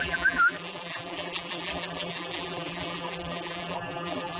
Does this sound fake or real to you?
fake